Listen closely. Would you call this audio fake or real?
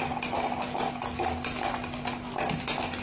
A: real